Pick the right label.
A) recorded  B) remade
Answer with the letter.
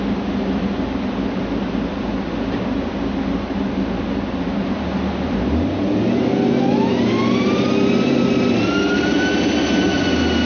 A